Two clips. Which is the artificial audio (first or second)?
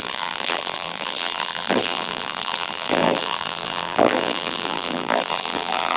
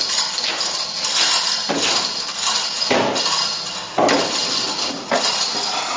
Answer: first